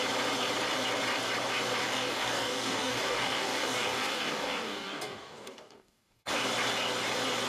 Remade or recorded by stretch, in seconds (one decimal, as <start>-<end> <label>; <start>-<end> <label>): 0.0-1.8 recorded; 1.8-6.3 remade; 6.3-7.5 recorded